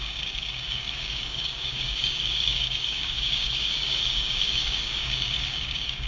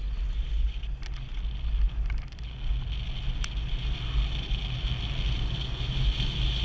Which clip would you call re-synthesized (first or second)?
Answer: first